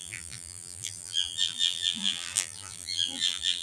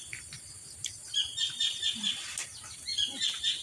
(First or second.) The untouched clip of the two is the second